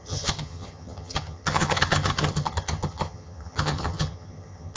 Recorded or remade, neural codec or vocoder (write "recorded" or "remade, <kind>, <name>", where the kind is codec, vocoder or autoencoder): remade, vocoder, HiFi-GAN